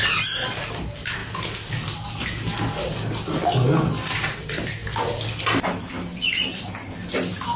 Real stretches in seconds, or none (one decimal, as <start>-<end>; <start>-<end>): 0.0-7.6

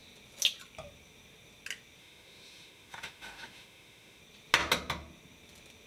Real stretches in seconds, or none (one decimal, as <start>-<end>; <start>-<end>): 0.0-2.0; 4.2-5.9